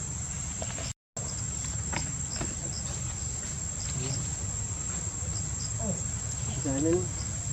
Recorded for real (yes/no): yes